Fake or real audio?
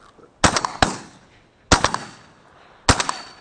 real